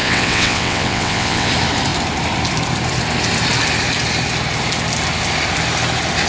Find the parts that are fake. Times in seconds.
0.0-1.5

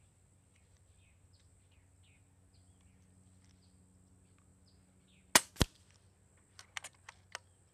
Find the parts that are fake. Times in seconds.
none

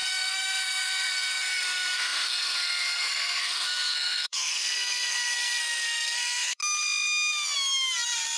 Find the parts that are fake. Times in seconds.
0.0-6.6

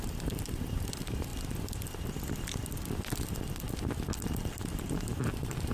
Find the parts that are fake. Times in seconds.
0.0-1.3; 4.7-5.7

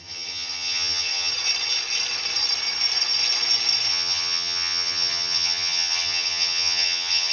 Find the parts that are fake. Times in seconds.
0.0-1.3; 3.9-7.3